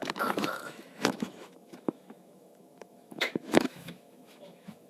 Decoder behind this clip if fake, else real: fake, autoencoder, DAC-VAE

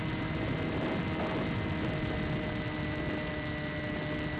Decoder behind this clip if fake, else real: real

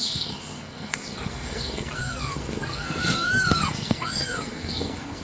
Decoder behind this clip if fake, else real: fake, codec, SNAC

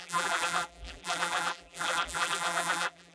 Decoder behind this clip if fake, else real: fake, vocoder, BigVGAN v2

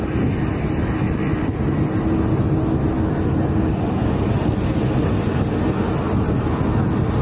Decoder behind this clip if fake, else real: real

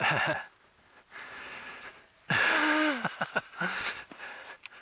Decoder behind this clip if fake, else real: real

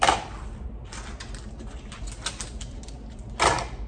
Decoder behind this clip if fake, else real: real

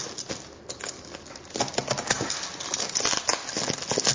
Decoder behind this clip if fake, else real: real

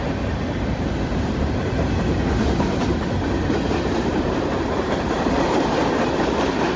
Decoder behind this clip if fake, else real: fake, vocoder, BigVGAN v2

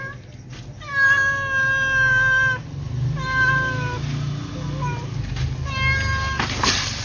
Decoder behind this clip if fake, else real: real